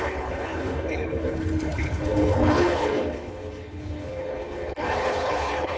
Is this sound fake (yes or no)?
yes